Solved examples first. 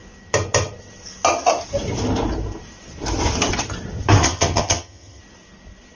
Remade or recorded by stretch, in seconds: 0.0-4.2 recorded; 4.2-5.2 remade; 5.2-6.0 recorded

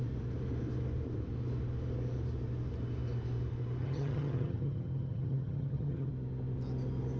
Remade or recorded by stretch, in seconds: 0.0-3.8 recorded; 3.8-6.1 remade; 6.1-7.2 recorded

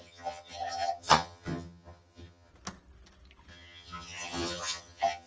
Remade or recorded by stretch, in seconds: 0.0-2.5 remade; 2.5-3.5 recorded; 3.5-5.3 remade

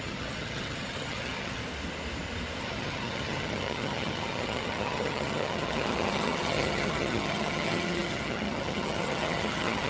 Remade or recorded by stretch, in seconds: 0.0-1.6 remade; 1.6-2.6 recorded; 2.6-9.9 remade